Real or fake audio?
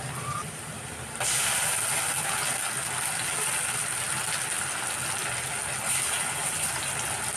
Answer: real